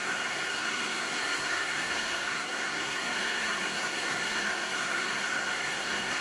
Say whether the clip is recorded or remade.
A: remade